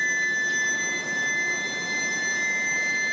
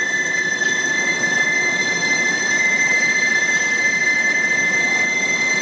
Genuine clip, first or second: first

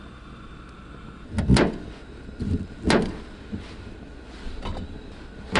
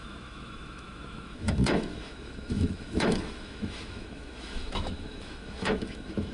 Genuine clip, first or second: first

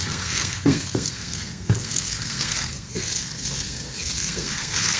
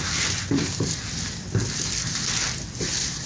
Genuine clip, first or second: second